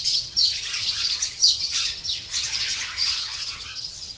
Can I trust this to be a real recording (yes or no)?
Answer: no